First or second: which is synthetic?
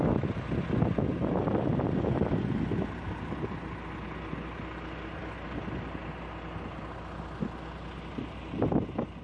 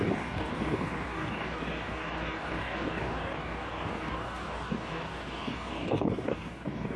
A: second